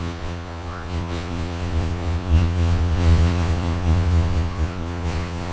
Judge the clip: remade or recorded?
remade